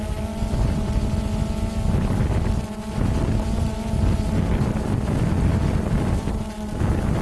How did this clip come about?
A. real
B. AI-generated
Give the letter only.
A